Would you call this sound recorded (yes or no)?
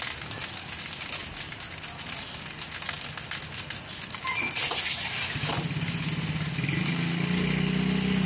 yes